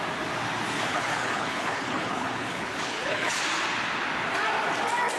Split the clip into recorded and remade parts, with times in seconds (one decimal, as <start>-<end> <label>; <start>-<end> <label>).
0.0-0.9 recorded; 0.9-3.4 remade; 3.4-5.2 recorded